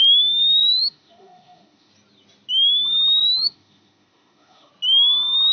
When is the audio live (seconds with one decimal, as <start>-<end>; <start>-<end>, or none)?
0.0-0.6; 1.9-3.2; 4.7-5.5